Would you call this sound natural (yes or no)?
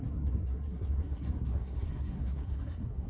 no